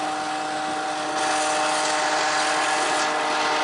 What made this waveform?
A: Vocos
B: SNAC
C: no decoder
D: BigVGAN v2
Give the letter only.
C